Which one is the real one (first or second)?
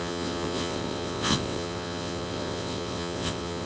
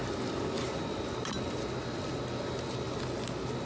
second